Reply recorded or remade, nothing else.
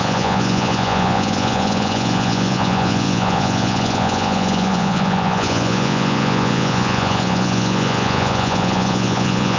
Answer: remade